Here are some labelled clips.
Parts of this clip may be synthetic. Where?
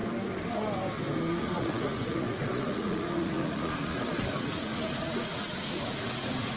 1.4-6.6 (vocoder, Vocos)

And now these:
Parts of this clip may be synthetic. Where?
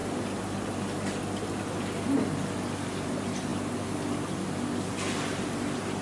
none